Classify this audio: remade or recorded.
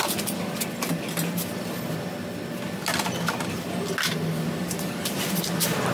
recorded